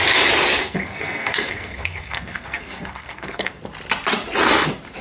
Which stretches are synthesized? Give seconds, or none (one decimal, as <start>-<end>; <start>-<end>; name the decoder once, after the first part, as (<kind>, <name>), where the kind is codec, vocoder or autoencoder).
0.6-3.6 (codec, SNAC)